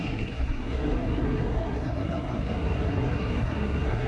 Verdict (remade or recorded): remade